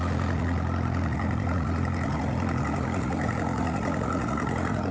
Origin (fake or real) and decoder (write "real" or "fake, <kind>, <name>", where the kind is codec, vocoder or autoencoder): fake, vocoder, Vocos